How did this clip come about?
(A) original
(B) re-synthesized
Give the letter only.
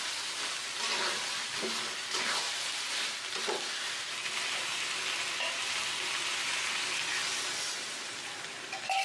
B